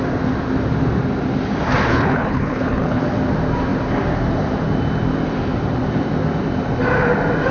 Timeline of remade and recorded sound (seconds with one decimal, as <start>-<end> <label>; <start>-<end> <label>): 0.0-1.9 recorded; 1.9-3.0 remade; 3.0-7.5 recorded